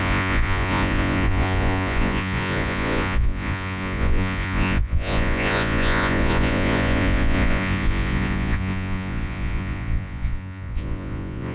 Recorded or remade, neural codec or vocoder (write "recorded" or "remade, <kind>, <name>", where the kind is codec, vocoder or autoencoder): remade, vocoder, Vocos